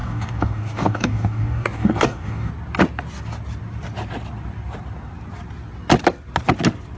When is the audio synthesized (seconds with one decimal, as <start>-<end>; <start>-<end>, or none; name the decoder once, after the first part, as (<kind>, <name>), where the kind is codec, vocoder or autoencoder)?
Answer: 0.0-2.5 (codec, DAC)